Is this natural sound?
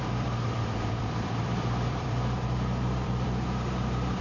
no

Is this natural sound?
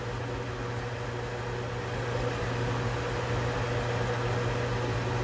yes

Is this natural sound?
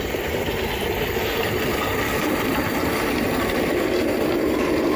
no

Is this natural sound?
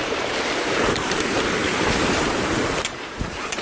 no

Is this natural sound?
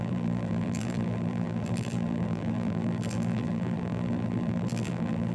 no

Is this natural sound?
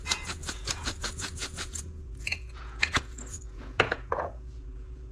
no